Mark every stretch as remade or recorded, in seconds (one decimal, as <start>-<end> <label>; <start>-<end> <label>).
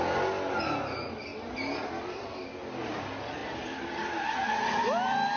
0.0-1.3 recorded; 1.3-2.5 remade; 2.5-3.4 recorded; 3.4-5.4 remade